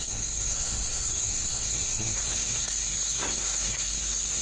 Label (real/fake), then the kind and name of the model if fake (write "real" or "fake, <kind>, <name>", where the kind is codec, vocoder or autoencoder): fake, codec, SNAC